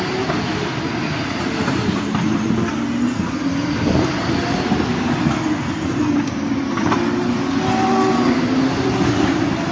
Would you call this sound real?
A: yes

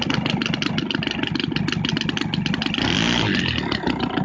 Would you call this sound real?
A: yes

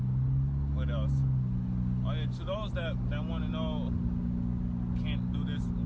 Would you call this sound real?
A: yes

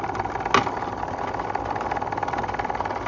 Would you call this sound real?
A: yes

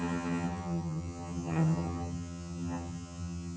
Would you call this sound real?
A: no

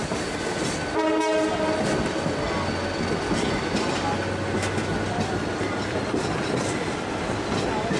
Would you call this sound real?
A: yes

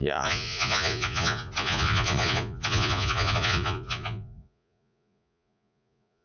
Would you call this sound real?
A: no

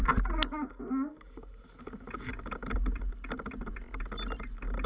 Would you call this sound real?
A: yes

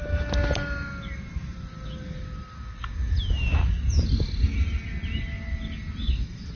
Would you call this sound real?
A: yes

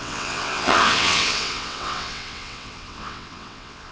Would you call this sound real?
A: no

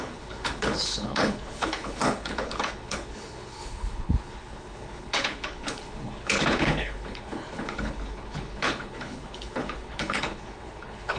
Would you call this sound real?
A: no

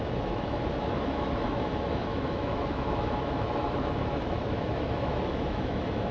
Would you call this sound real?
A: no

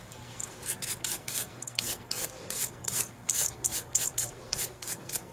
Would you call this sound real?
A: no